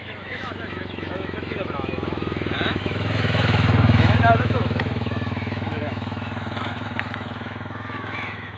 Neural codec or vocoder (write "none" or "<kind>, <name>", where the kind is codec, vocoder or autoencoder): autoencoder, DAC-VAE